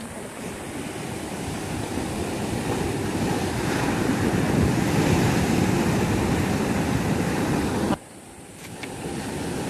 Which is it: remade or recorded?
remade